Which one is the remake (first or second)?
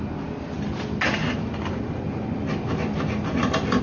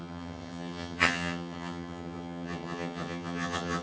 second